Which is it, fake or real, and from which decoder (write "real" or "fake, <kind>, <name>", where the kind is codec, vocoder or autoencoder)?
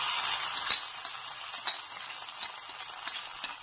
real